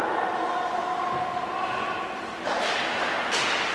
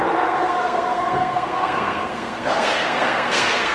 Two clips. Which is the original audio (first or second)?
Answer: first